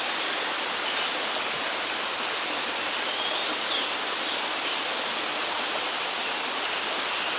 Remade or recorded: recorded